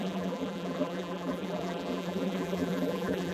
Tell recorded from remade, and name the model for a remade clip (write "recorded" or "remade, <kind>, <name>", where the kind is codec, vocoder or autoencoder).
remade, vocoder, BigVGAN v2